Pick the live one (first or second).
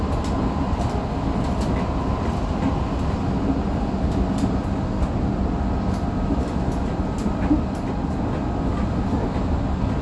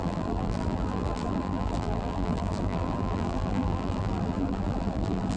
first